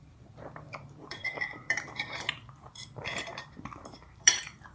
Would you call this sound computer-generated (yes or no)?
yes